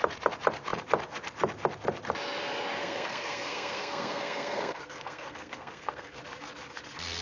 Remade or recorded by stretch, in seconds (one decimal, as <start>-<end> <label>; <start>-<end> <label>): 0.0-2.8 recorded; 2.8-6.2 remade; 6.2-7.2 recorded